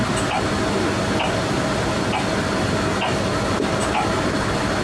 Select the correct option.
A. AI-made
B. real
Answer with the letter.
B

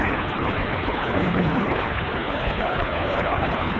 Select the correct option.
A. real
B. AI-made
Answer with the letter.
B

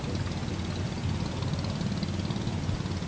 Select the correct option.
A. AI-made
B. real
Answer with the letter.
B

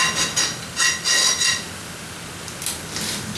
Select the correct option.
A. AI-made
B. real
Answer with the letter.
B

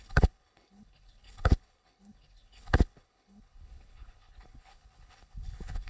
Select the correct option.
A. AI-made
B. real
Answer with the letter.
A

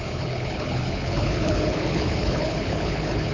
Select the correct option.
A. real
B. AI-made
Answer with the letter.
B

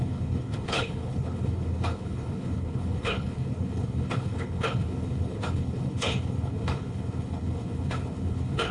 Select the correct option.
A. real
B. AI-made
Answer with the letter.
B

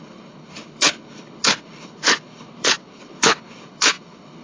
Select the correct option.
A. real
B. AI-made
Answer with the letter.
B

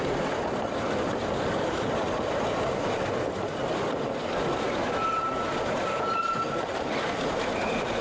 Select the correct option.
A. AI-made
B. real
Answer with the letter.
B